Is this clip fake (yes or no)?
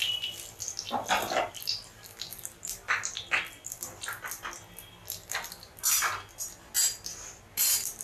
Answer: no